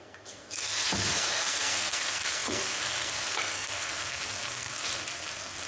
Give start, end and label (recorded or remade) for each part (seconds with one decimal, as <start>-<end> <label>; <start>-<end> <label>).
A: 0.0-5.7 remade